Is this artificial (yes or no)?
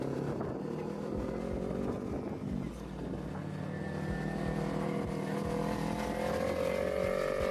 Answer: no